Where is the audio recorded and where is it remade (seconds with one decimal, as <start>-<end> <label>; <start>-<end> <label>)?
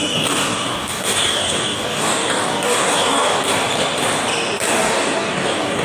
0.0-3.5 remade; 3.5-4.7 recorded; 4.7-5.8 remade